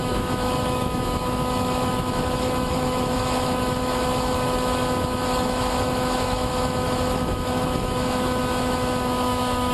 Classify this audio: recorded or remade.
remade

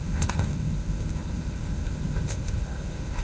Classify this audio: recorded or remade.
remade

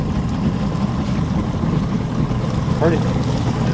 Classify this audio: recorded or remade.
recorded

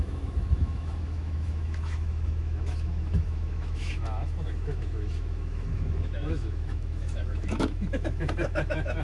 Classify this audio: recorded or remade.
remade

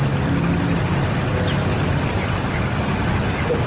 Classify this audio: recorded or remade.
recorded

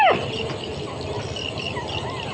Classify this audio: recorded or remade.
recorded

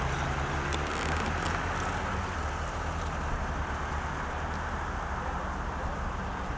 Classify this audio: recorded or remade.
recorded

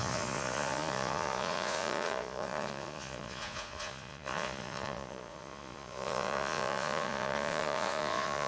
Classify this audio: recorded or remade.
remade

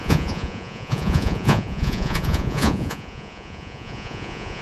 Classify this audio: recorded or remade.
remade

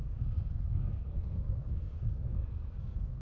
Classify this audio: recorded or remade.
remade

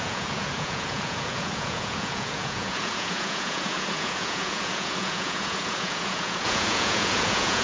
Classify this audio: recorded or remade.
remade